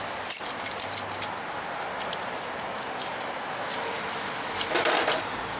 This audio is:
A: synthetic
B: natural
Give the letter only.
B